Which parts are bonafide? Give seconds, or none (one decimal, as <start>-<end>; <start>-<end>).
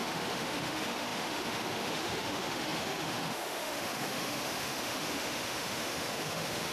none